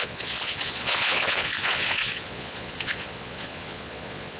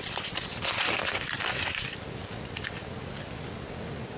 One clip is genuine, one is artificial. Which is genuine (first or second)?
second